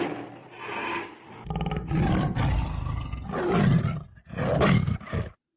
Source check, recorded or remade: recorded